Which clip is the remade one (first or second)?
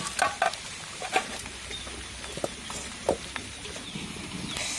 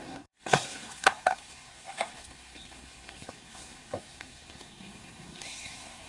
second